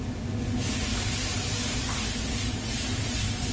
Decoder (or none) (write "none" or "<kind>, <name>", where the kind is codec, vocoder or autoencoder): none